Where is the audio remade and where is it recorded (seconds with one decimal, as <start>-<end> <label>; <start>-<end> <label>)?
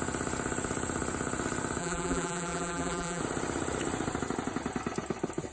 0.0-1.8 recorded; 1.8-3.2 remade; 3.2-5.5 recorded